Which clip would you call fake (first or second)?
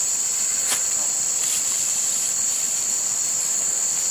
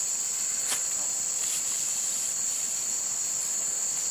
first